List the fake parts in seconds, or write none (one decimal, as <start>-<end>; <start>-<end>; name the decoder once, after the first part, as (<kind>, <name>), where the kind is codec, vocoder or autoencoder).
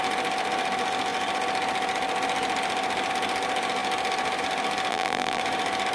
4.9-5.4 (vocoder, BigVGAN v2)